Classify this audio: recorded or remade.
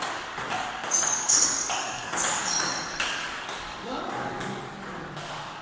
remade